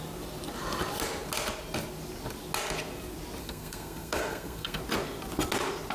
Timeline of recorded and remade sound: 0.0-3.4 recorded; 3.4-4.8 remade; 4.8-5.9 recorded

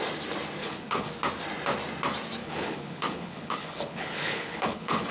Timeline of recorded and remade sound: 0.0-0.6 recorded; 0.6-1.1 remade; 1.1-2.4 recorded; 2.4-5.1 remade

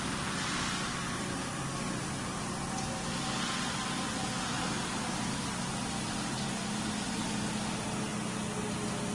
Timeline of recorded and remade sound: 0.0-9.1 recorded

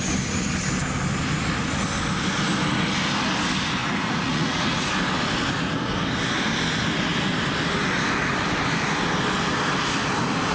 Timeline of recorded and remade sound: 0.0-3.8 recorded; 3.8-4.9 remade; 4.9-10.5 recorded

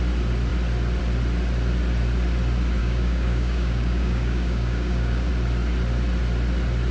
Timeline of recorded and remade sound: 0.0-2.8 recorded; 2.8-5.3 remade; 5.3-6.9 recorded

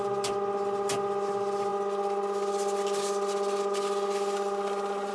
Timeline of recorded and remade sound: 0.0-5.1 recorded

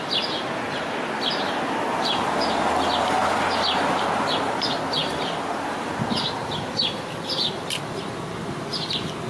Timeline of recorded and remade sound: 0.0-9.3 recorded

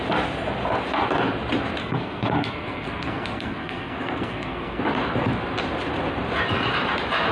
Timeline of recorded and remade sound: 0.0-1.8 recorded; 1.8-4.8 remade; 4.8-7.3 recorded